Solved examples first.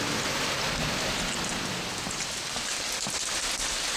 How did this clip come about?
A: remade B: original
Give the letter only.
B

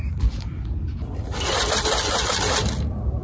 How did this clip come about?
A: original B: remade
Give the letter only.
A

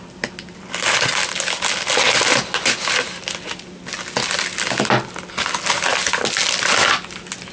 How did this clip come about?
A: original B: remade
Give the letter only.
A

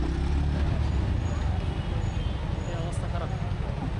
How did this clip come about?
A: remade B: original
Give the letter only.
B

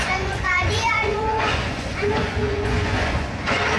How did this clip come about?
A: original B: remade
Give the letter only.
B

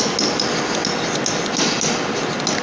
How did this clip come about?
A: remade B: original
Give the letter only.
B